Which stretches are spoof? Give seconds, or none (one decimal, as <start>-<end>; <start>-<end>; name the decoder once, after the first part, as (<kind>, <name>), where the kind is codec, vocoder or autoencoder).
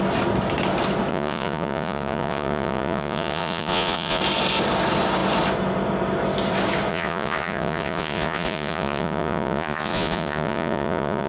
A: 1.1-4.2 (vocoder, Vocos); 6.9-11.3